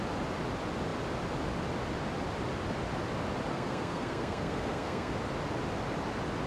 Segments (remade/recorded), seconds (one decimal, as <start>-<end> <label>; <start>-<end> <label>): 0.0-3.5 recorded; 3.5-5.1 remade; 5.1-6.5 recorded

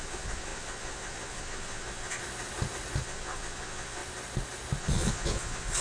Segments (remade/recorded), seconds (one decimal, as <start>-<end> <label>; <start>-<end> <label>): 0.0-2.2 remade; 2.2-3.0 recorded; 3.0-4.0 remade; 4.0-4.8 recorded; 4.8-5.8 remade

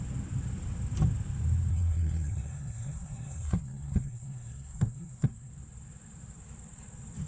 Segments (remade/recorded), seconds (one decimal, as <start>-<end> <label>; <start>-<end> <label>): 0.0-1.7 recorded; 1.7-5.5 remade; 5.5-7.3 recorded

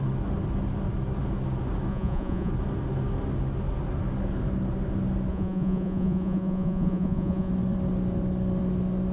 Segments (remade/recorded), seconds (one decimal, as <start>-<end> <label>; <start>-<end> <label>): 0.0-1.9 recorded; 1.9-2.5 remade; 2.5-5.3 recorded; 5.3-7.5 remade; 7.5-9.1 recorded

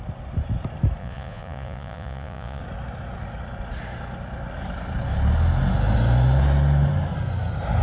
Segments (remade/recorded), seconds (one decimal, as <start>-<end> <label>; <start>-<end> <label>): 0.0-1.0 recorded; 1.0-2.6 remade; 2.6-7.8 recorded